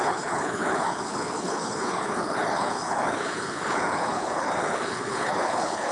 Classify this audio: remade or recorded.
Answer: remade